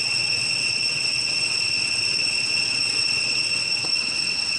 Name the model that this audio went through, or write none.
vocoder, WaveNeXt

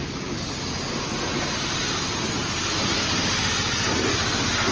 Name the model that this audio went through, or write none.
none